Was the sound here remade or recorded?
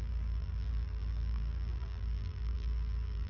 remade